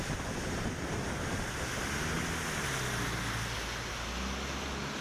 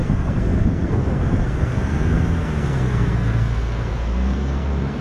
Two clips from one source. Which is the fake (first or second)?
second